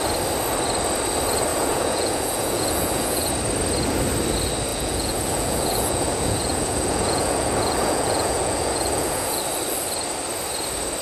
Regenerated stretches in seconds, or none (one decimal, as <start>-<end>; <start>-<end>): 1.5-3.3; 4.7-9.4